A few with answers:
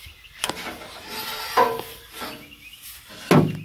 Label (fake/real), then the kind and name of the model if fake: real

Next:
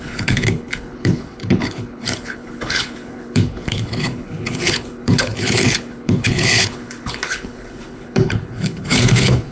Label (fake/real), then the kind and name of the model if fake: fake, codec, HILCodec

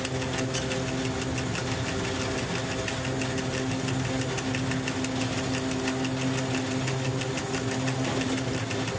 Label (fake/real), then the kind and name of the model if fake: real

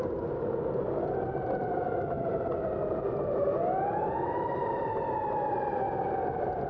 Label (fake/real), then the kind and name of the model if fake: real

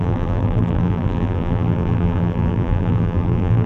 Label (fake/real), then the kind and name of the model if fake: fake, vocoder, BigVGAN v2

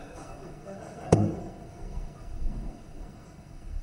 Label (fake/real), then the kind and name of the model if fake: fake, codec, SNAC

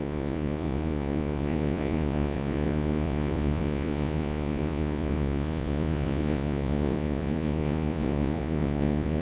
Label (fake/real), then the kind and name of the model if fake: fake, vocoder, Vocos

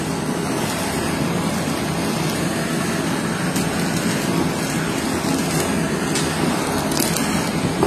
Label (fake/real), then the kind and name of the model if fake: real